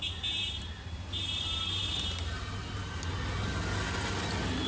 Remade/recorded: recorded